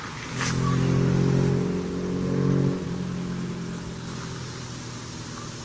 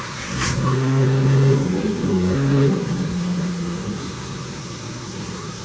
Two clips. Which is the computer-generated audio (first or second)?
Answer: second